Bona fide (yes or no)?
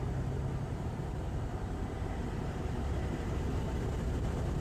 no